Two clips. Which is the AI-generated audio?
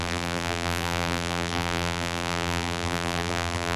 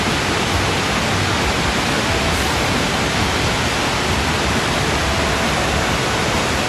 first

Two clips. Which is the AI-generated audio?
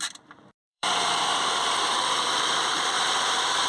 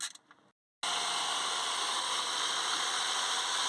first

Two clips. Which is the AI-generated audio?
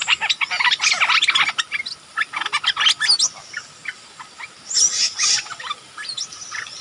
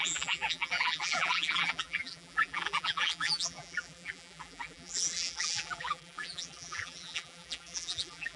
second